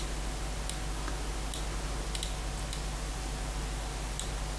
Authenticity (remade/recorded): recorded